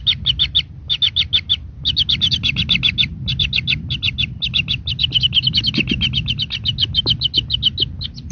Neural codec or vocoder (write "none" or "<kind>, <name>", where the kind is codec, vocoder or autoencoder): none